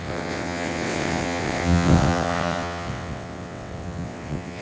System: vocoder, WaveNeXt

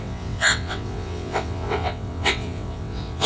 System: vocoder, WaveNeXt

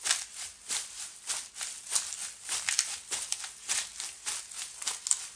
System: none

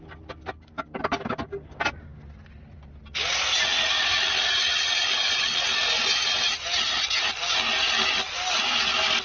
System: none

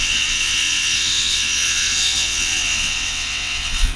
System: vocoder, WaveNeXt